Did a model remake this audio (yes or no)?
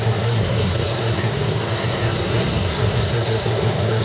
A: yes